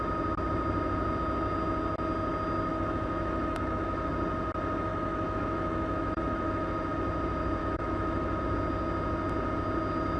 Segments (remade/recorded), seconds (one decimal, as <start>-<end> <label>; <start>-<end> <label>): 0.0-2.7 recorded; 2.7-4.1 remade; 4.1-4.9 recorded; 4.9-6.7 remade; 6.7-7.6 recorded; 7.6-8.4 remade; 8.4-10.2 recorded